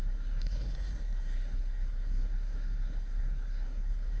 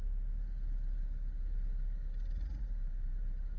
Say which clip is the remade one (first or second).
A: first